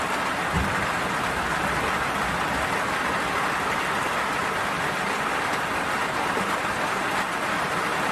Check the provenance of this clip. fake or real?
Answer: real